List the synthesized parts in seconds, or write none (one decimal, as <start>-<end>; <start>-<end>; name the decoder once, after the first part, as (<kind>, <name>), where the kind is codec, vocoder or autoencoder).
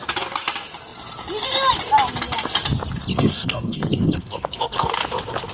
3.1-4.9 (codec, SNAC)